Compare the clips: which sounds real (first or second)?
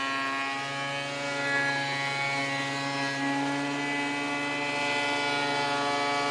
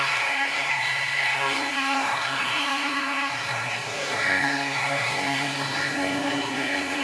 first